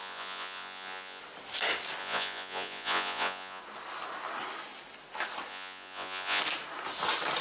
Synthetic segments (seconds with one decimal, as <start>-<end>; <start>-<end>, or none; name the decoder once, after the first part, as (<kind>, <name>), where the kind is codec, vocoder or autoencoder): 0.0-1.2 (vocoder, Vocos); 2.0-3.6; 5.5-6.4